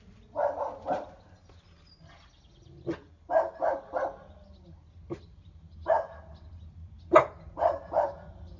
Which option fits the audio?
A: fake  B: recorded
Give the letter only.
B